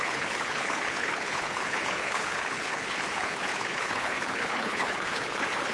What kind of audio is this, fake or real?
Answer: fake